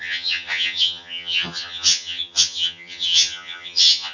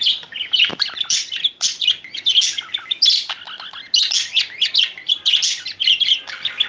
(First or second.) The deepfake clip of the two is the first